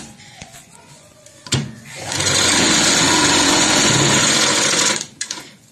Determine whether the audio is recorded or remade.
remade